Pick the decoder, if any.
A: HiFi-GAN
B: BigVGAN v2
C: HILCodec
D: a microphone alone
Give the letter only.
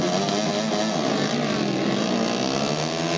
D